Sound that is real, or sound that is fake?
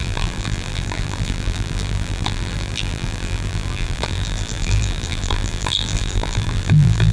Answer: fake